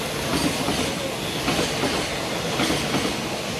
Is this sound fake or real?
real